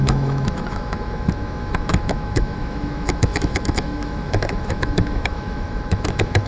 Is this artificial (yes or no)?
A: yes